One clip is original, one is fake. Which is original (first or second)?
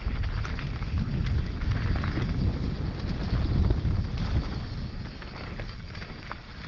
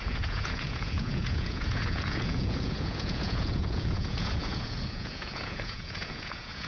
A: first